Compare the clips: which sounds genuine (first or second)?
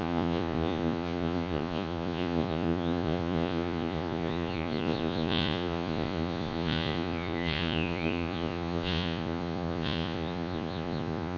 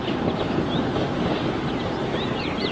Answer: second